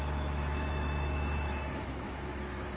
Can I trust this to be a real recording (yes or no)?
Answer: no